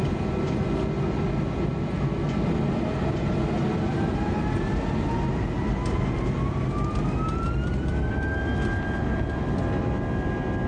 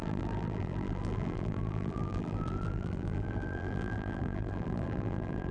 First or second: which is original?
first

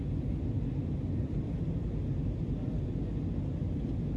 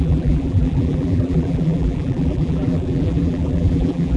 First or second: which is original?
first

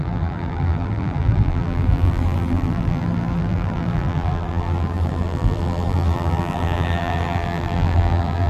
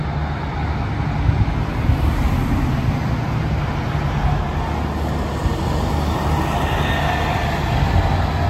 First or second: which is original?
second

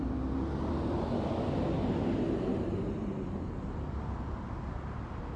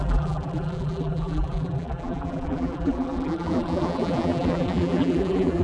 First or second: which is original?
first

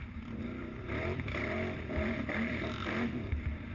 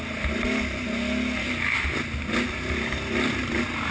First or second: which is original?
second